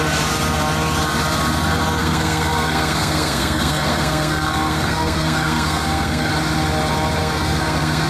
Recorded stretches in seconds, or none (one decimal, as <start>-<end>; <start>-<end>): 0.0-2.0; 6.3-7.2